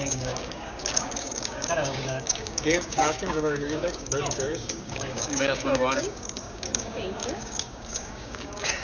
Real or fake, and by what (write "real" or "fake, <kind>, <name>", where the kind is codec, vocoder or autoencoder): fake, codec, DAC